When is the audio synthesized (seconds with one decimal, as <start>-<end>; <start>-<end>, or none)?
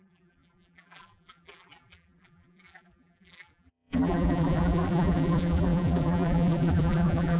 0.0-7.4